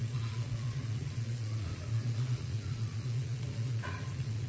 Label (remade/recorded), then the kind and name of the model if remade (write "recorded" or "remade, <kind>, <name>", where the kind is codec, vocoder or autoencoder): remade, vocoder, Vocos